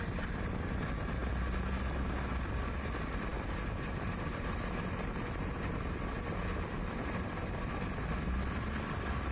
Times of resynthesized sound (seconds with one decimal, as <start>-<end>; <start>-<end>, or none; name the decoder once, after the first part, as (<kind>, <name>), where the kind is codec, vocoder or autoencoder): 0.0-1.2 (vocoder, BigVGAN v2); 2.3-9.3